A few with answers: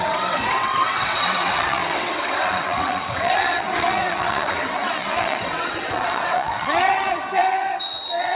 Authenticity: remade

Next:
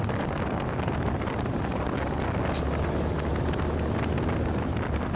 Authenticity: recorded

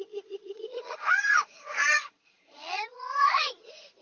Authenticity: remade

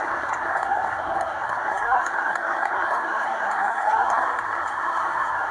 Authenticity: remade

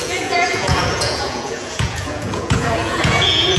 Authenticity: remade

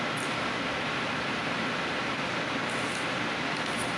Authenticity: recorded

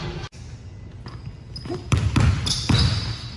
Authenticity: recorded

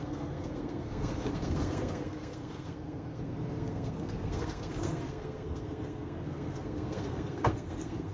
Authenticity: remade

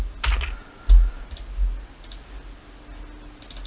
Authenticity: recorded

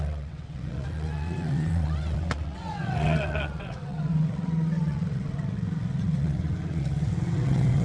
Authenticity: remade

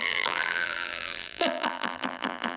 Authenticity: remade